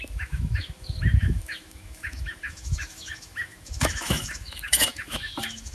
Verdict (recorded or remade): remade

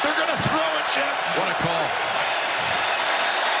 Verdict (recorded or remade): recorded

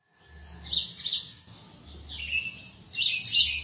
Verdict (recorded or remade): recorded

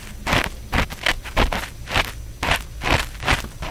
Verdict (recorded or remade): recorded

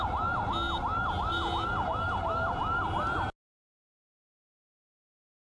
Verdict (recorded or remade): recorded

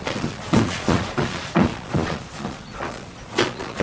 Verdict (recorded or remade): remade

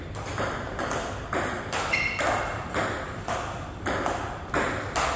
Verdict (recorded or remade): recorded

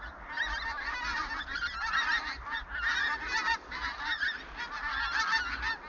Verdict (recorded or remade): recorded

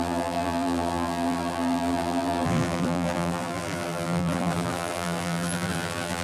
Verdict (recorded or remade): remade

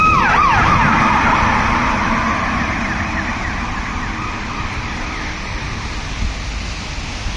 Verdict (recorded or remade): recorded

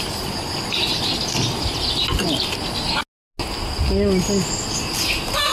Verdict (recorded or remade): recorded